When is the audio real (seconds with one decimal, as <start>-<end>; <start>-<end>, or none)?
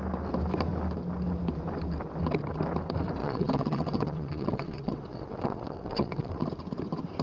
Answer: 0.0-3.2; 6.4-7.2